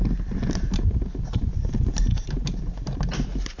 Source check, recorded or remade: recorded